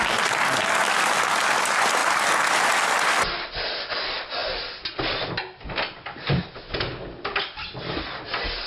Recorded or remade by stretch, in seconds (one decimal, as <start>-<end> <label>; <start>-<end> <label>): 0.0-2.0 recorded; 2.0-2.6 remade; 2.6-8.7 recorded